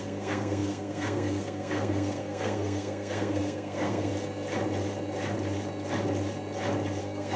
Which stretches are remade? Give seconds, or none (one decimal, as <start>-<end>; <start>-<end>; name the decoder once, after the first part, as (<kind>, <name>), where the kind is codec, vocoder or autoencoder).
0.0-4.1 (codec, SNAC); 7.0-7.4